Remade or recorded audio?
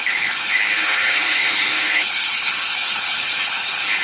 remade